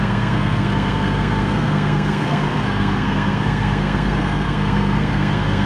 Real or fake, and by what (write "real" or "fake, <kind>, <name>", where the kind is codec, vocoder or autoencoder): fake, codec, SNAC